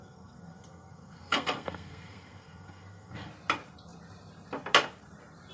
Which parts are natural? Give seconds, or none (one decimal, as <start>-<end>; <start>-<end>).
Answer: 3.3-5.5